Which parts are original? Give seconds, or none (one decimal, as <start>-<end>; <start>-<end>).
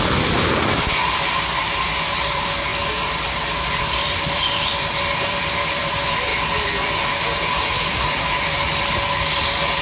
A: 6.3-7.8